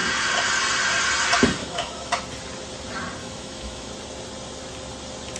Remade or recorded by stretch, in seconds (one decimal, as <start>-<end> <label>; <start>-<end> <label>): 0.0-1.6 recorded; 1.6-2.2 remade; 2.2-3.2 recorded; 3.2-3.9 remade; 3.9-5.4 recorded